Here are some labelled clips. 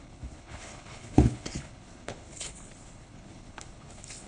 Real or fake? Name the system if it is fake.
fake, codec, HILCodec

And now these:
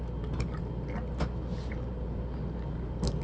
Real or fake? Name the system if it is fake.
real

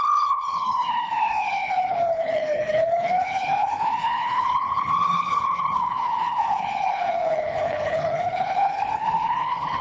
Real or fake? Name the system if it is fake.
fake, codec, HILCodec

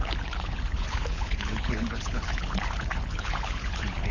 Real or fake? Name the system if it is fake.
fake, codec, HILCodec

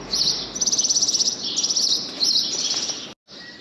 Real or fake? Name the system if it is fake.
real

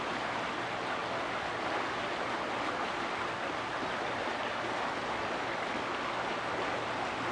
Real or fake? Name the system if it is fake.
real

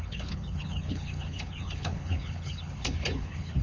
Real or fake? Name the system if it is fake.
fake, codec, HILCodec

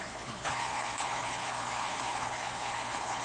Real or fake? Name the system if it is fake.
fake, codec, HILCodec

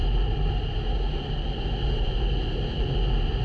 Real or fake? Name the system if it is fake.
real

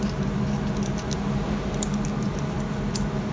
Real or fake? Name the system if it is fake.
real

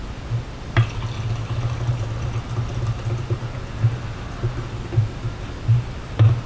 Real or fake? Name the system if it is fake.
real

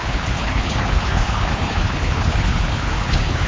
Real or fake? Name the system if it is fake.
fake, codec, HILCodec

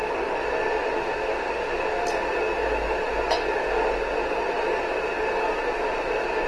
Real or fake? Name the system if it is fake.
real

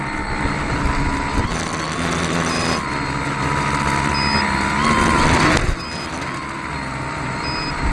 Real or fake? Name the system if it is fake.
real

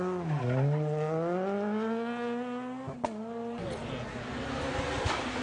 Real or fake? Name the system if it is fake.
real